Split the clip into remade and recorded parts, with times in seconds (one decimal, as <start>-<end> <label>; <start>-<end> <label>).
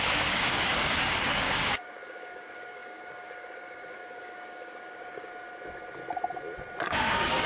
0.0-5.3 remade; 5.3-6.9 recorded; 6.9-7.5 remade